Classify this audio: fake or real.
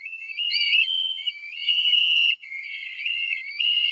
fake